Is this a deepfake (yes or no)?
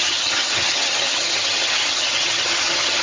yes